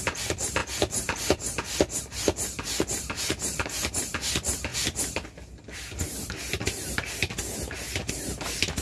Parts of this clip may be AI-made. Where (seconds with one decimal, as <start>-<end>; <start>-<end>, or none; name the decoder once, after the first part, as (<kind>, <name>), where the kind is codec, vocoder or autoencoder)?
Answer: 0.0-4.7 (vocoder, BigVGAN v2); 8.1-8.8